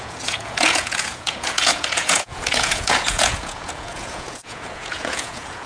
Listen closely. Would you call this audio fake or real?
fake